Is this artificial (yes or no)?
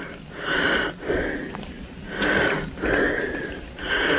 no